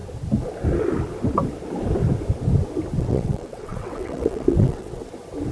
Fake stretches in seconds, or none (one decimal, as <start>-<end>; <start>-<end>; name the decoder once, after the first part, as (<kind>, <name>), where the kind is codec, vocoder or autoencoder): 3.0-5.0 (vocoder, WaveNeXt)